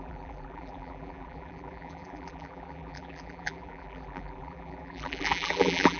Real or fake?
fake